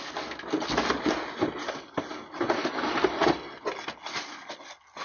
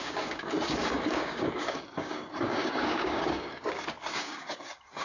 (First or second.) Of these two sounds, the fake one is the second